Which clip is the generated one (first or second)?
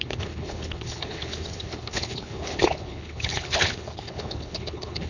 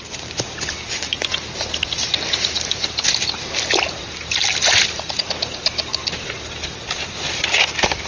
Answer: first